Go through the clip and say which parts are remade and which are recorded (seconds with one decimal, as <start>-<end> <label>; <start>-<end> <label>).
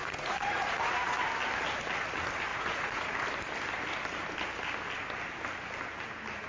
0.0-1.2 remade; 1.2-2.5 recorded; 2.5-3.1 remade; 3.1-6.5 recorded